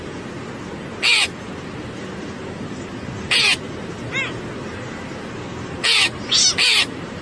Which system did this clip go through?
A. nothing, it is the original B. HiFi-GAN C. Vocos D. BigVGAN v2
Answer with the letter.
A